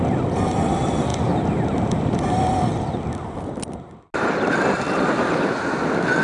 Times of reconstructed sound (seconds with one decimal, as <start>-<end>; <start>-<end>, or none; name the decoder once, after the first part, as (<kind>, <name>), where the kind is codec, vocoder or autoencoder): none